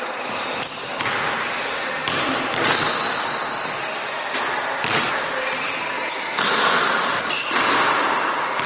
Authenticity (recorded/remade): recorded